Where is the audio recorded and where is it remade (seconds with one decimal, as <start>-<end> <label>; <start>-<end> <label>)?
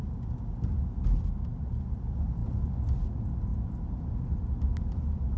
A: 0.0-3.5 recorded; 3.5-4.6 remade; 4.6-5.4 recorded